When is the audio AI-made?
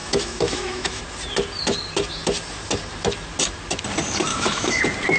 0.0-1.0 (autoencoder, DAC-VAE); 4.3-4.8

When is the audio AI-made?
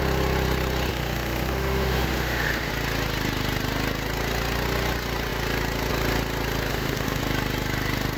0.9-2.7 (autoencoder, DAC-VAE); 6.7-7.2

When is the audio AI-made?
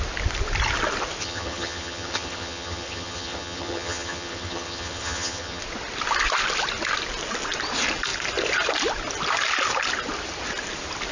1.2-5.6 (vocoder, HiFi-GAN)